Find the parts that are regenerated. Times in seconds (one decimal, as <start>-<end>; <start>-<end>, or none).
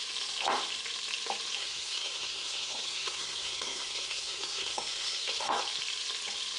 1.6-5.6